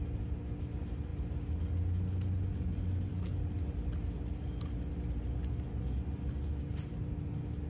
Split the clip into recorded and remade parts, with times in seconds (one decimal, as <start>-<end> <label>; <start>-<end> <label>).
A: 0.0-7.7 recorded